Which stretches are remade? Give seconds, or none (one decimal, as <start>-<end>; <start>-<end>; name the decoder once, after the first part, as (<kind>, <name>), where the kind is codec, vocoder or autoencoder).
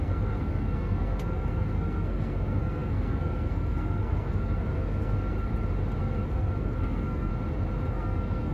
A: 0.0-5.5 (codec, SNAC); 6.0-7.3; 7.9-8.5